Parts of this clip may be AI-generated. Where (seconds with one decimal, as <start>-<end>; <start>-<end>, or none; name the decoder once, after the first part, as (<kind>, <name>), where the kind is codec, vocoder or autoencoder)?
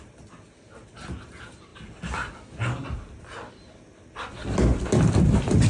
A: none